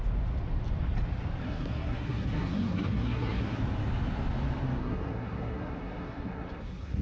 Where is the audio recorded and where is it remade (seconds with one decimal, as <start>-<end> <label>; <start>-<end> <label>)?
0.0-1.4 recorded; 1.4-3.6 remade; 3.6-4.8 recorded; 4.8-7.0 remade